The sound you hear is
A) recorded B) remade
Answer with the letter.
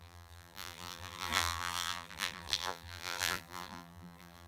B